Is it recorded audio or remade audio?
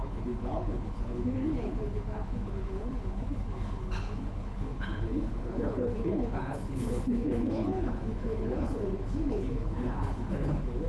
remade